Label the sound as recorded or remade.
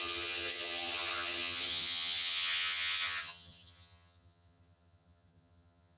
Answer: remade